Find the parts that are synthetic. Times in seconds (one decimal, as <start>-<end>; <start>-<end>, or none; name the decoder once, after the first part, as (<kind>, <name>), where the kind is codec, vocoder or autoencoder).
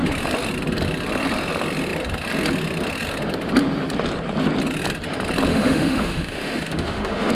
5.5-7.3 (autoencoder, DAC-VAE)